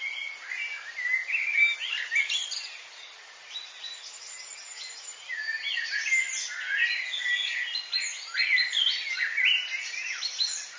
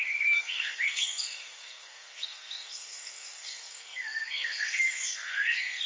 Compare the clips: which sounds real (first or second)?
first